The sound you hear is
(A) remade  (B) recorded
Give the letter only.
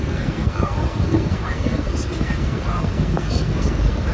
A